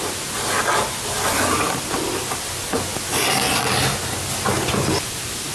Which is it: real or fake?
real